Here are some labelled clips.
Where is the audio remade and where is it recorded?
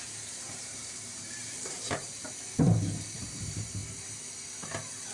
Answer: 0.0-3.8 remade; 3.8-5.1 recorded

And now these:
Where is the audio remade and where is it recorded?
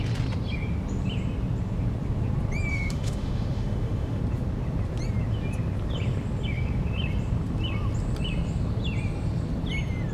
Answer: 0.0-2.7 recorded; 2.7-4.2 remade; 4.2-10.1 recorded